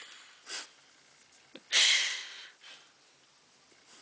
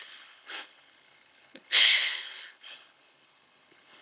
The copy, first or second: second